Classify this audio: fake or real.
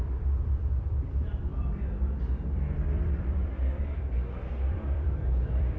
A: fake